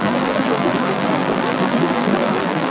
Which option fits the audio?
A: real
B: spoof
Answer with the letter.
B